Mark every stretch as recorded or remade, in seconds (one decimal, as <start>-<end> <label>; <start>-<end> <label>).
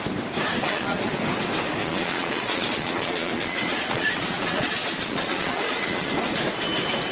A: 0.0-0.6 recorded; 0.6-1.2 remade; 1.2-1.8 recorded; 1.8-6.1 remade; 6.1-7.1 recorded